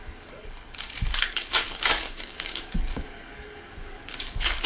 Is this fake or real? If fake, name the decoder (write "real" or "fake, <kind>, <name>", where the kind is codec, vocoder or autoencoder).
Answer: fake, codec, DAC